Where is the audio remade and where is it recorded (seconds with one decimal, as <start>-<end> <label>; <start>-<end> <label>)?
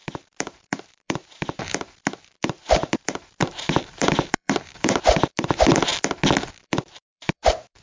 0.0-5.9 remade; 5.9-6.6 recorded; 6.6-7.8 remade